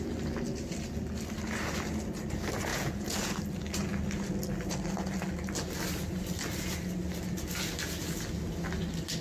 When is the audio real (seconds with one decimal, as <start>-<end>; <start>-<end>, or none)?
0.0-2.7; 3.3-9.2